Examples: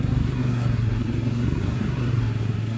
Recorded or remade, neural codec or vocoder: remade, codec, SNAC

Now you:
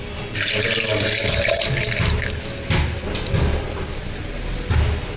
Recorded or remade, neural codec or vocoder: recorded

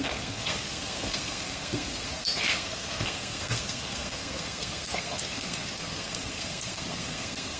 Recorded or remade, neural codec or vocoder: remade, codec, SNAC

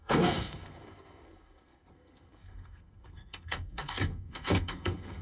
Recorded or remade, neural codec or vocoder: remade, codec, SNAC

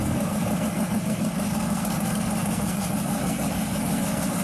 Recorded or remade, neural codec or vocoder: remade, codec, SNAC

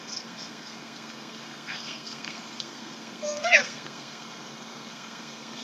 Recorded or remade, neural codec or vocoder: remade, codec, SNAC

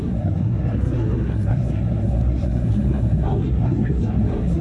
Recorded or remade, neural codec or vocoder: remade, codec, SNAC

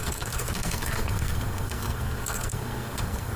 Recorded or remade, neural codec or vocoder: remade, codec, SNAC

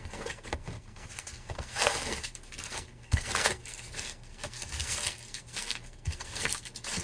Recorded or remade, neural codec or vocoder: remade, codec, SNAC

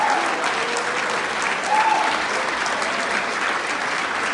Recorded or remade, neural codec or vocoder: recorded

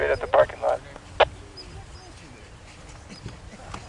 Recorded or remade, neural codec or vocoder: recorded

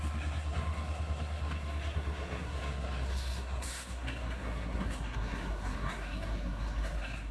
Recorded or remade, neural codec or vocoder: remade, codec, SNAC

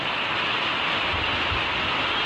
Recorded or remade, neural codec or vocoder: recorded